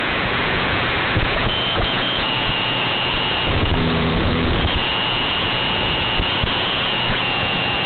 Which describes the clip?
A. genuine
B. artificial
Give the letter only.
B